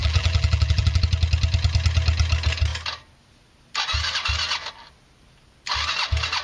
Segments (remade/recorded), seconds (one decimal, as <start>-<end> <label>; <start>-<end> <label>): 0.0-1.0 remade; 1.0-6.4 recorded